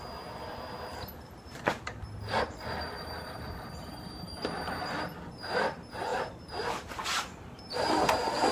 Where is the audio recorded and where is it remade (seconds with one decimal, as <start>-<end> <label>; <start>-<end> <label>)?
0.0-8.5 recorded